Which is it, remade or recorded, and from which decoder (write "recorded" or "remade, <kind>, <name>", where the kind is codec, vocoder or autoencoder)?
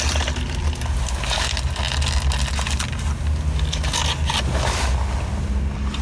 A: recorded